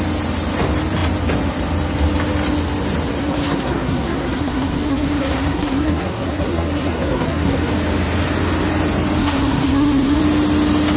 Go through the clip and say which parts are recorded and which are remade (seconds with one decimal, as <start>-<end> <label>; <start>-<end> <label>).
0.0-3.2 recorded; 3.2-7.7 remade; 7.7-9.2 recorded; 9.2-10.2 remade; 10.2-11.0 recorded